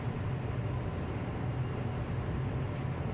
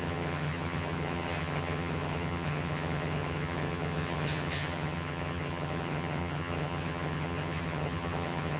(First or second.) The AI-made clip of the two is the second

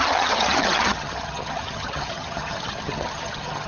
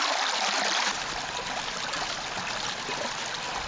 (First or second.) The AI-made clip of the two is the first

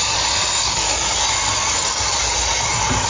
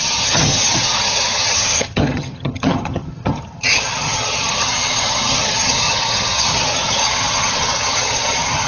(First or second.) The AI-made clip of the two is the second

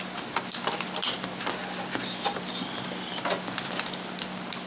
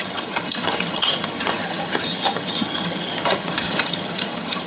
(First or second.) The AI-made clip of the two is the second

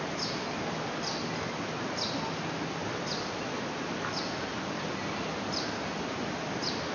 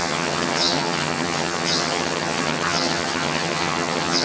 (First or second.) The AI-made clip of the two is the second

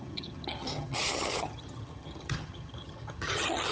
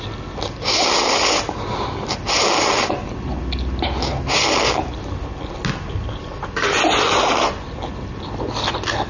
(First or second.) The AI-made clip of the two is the first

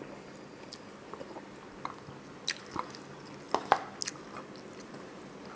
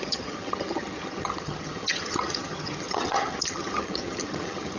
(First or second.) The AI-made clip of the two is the second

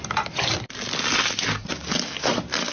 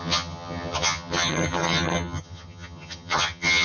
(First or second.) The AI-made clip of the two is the second